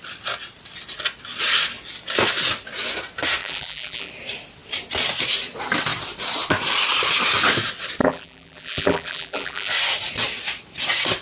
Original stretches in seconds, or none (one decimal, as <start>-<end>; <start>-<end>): 0.0-3.4; 4.1-8.0; 9.7-11.2